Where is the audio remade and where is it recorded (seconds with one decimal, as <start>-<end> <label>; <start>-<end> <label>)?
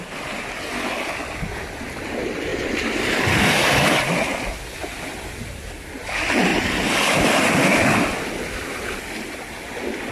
0.0-10.1 recorded